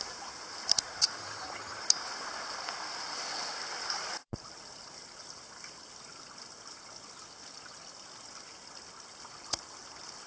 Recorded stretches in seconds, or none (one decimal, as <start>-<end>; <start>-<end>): 0.0-1.2; 1.8-10.3